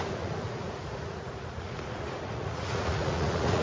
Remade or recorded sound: remade